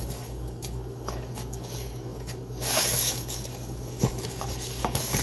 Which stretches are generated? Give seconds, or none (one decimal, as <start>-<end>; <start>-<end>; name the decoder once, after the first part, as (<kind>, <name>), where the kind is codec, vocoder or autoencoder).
0.0-5.2 (codec, DAC)